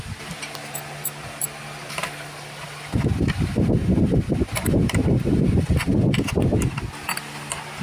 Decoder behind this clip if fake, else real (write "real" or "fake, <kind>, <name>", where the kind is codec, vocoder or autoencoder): real